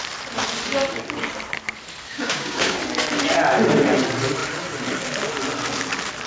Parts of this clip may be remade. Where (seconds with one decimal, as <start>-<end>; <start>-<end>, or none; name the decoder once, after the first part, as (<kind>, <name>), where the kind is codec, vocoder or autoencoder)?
2.1-2.8 (codec, DAC)